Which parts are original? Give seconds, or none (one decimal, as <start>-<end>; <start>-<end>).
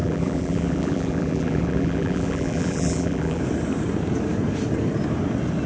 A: 3.4-5.7